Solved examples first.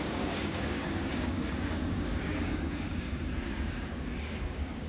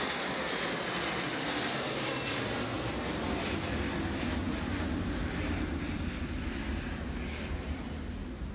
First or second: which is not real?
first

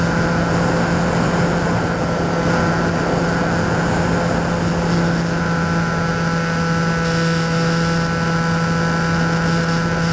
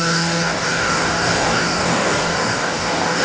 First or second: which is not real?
second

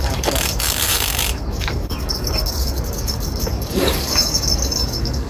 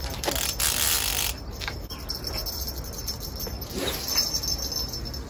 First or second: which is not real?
first